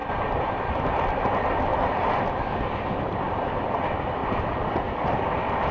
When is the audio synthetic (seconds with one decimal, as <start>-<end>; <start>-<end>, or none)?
0.0-0.8; 1.7-2.2; 4.2-5.7